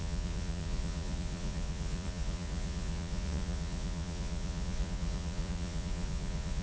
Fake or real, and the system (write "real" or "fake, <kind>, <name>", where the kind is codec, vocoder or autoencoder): fake, vocoder, Vocos